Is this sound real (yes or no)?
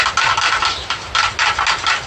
yes